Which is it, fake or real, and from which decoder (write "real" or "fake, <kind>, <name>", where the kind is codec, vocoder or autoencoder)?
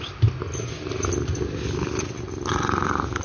real